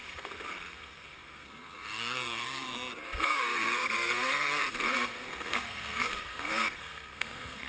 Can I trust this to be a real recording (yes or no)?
no